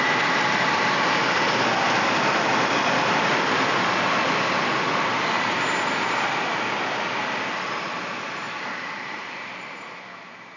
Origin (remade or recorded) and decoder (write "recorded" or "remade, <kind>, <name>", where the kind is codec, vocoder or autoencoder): recorded